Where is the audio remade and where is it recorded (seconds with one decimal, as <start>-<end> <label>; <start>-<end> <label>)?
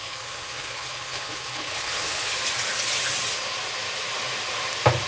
0.0-2.4 remade; 2.4-5.1 recorded